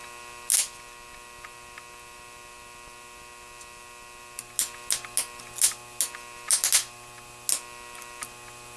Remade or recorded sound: recorded